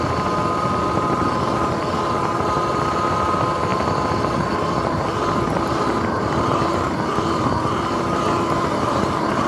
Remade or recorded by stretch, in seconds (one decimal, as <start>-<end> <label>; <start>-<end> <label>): 0.0-9.5 recorded